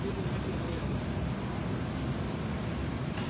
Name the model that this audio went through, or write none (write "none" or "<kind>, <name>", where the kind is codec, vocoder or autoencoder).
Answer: none